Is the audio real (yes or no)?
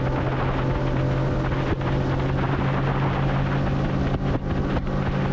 yes